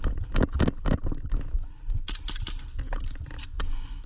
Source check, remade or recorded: recorded